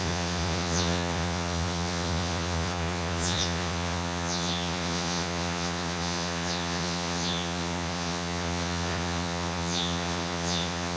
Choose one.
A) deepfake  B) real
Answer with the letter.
A